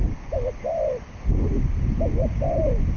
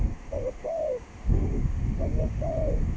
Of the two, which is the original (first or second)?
first